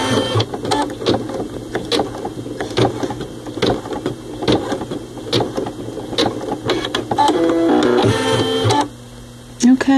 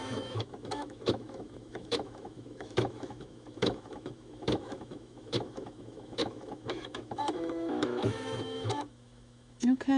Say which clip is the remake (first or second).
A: second